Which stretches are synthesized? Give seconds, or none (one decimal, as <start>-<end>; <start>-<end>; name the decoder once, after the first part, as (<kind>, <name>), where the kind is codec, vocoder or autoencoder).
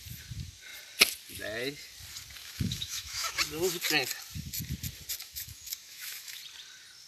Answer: 2.4-3.4 (autoencoder, DAC-VAE); 5.2-6.4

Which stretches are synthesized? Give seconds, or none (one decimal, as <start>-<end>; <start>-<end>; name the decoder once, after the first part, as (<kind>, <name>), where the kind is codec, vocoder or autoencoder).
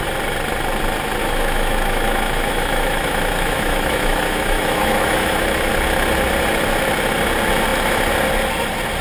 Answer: 1.2-5.7 (autoencoder, DAC-VAE)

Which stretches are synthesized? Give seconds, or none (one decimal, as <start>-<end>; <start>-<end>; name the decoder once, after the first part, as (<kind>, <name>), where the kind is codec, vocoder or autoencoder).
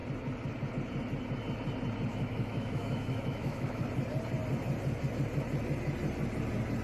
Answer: 2.1-3.8 (autoencoder, DAC-VAE)